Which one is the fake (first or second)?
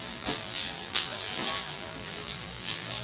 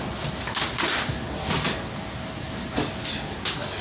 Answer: first